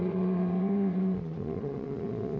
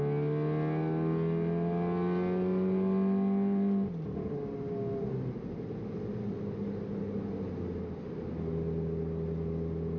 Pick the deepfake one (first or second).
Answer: first